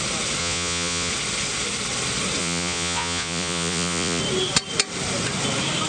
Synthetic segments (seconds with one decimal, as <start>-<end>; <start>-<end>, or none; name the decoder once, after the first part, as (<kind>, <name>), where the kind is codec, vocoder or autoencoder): 0.4-1.1 (vocoder, Vocos); 2.4-4.2